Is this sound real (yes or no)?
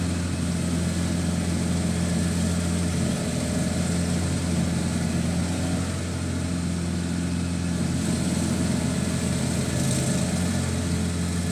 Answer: yes